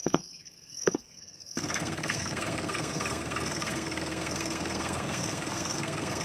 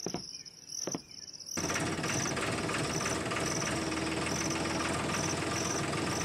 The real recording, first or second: second